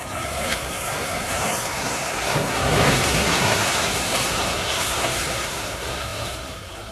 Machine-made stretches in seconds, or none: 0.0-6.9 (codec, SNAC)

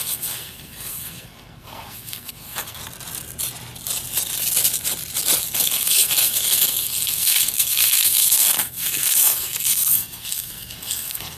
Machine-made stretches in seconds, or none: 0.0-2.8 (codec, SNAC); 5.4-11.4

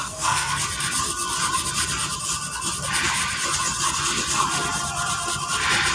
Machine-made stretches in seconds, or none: 0.0-0.6 (codec, SNAC)

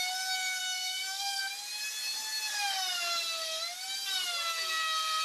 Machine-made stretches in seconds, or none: 0.6-1.4 (codec, SNAC)

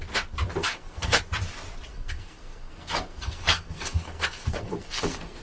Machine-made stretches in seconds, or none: 0.6-1.2 (codec, SNAC); 1.9-5.4

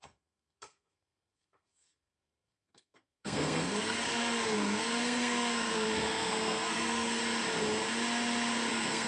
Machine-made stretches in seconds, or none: 0.0-7.2 (codec, SNAC); 8.7-9.1

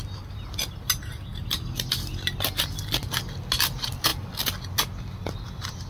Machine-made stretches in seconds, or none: none

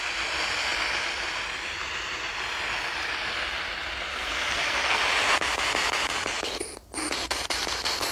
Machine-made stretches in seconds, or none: 4.1-5.0 (codec, SNAC)